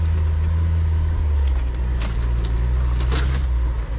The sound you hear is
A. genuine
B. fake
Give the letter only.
A